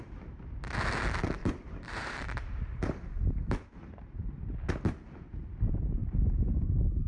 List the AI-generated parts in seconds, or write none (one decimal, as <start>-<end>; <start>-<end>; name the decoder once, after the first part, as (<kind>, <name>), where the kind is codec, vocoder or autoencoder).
1.4-4.4 (vocoder, BigVGAN v2); 6.0-7.1